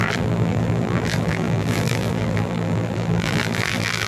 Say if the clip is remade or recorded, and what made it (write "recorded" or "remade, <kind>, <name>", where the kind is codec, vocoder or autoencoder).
remade, vocoder, BigVGAN v2